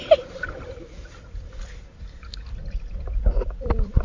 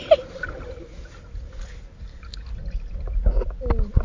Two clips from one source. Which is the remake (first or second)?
first